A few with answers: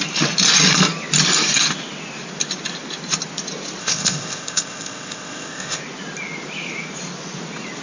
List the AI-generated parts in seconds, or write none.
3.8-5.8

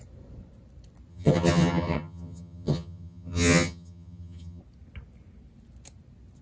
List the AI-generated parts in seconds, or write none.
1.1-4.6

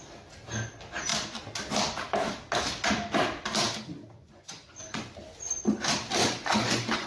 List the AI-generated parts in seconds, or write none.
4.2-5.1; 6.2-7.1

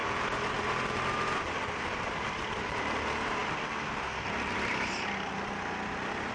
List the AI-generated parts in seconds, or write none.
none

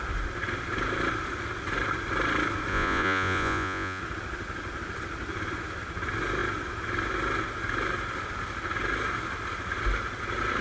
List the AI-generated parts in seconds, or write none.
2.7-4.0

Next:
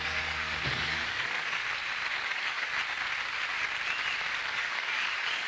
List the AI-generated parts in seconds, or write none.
0.0-1.6; 2.1-2.7; 4.5-5.5